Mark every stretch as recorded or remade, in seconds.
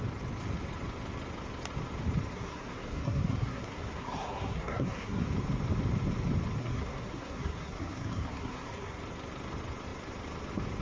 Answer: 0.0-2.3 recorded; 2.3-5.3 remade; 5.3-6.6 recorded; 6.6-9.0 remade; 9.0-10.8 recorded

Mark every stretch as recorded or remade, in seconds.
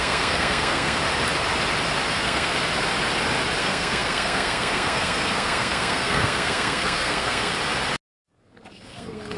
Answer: 0.0-1.0 remade; 1.0-2.1 recorded; 2.1-2.5 remade; 2.5-3.6 recorded; 3.6-7.5 remade; 7.5-8.1 recorded; 8.1-9.4 remade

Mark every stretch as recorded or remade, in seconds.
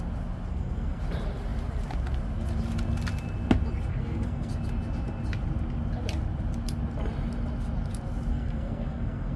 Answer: 0.0-0.5 recorded; 0.5-1.0 remade; 1.0-3.9 recorded; 3.9-4.5 remade; 4.5-8.3 recorded; 8.3-9.4 remade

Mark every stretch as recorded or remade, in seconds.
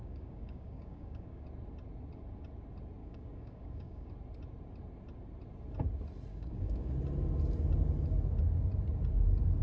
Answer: 0.0-1.4 remade; 1.4-3.0 recorded; 3.0-4.1 remade; 4.1-6.3 recorded; 6.3-6.9 remade; 6.9-9.6 recorded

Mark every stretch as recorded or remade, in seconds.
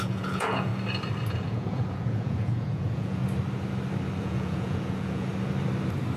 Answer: 0.0-0.7 remade; 0.7-1.3 recorded; 1.3-3.2 remade; 3.2-4.2 recorded; 4.2-5.3 remade; 5.3-6.2 recorded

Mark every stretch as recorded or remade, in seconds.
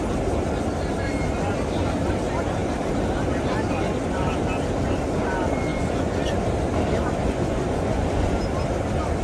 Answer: 0.0-5.7 recorded; 5.7-6.4 remade; 6.4-7.2 recorded; 7.2-8.4 remade; 8.4-9.2 recorded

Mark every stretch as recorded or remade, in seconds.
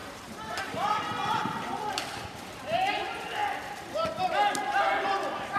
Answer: 0.0-2.6 remade; 2.6-3.4 recorded; 3.4-4.2 remade; 4.2-5.6 recorded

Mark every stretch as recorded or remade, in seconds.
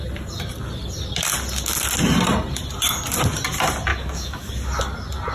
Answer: 0.0-3.9 recorded; 3.9-4.5 remade; 4.5-5.3 recorded